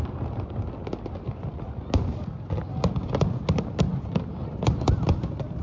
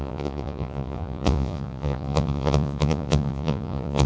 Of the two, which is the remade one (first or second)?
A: second